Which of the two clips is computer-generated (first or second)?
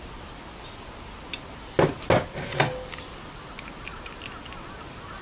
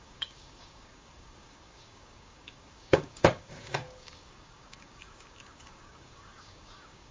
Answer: second